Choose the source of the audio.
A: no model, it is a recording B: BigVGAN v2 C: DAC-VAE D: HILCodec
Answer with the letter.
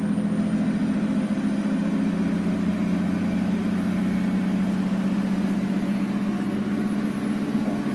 A